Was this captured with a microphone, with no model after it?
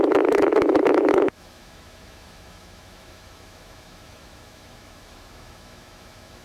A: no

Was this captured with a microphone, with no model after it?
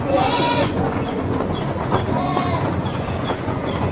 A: no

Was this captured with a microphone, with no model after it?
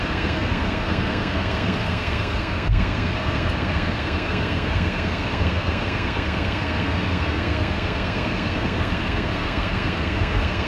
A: no